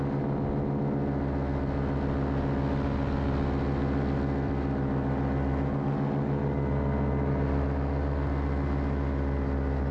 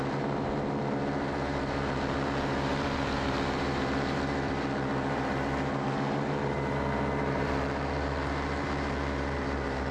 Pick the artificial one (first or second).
second